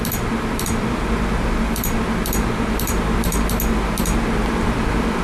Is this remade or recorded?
remade